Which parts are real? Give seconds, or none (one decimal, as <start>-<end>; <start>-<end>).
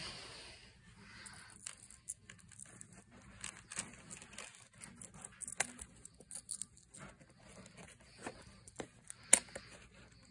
0.0-10.3